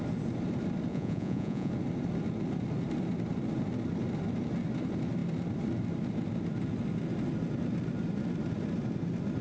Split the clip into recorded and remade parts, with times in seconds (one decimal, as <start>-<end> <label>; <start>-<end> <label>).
0.0-0.9 recorded; 0.9-1.7 remade; 1.7-9.4 recorded

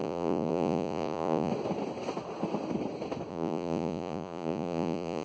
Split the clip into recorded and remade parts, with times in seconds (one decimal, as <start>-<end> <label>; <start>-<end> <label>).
0.0-1.5 remade; 1.5-3.3 recorded; 3.3-5.2 remade

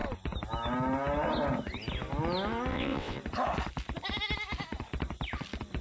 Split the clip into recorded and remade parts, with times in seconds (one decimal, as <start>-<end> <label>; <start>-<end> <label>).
0.0-2.7 recorded; 2.7-3.2 remade; 3.2-5.8 recorded